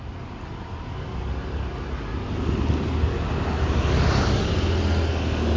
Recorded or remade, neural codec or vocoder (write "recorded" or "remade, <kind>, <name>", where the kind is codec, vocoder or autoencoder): recorded